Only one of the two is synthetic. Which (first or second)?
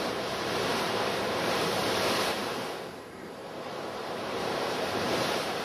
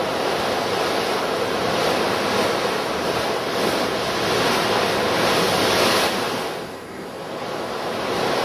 first